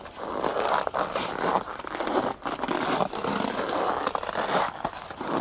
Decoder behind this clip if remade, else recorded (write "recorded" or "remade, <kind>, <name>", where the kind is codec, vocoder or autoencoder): recorded